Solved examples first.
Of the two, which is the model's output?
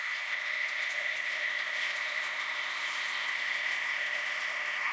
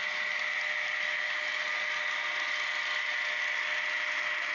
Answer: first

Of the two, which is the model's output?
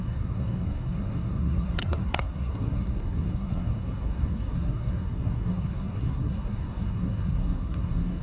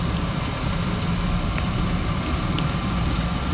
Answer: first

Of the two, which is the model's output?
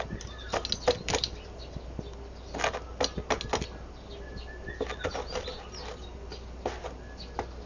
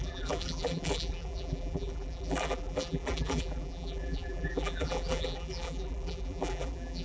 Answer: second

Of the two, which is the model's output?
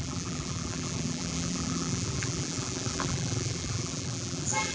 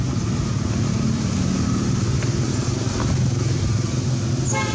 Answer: first